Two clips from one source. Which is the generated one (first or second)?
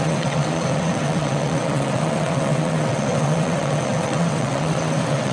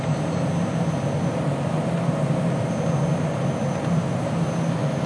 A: first